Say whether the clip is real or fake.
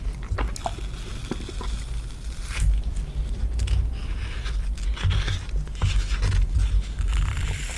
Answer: real